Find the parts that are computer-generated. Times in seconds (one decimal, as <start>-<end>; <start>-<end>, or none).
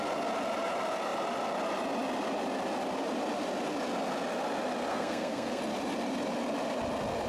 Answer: 4.9-5.6